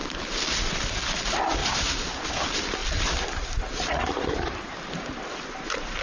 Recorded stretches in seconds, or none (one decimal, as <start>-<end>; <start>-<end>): 0.8-2.8; 3.3-6.0